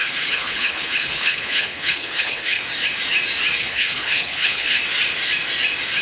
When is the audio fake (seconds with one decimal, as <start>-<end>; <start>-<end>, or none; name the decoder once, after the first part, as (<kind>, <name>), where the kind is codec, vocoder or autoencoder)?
0.0-2.6 (codec, HILCodec); 3.6-4.8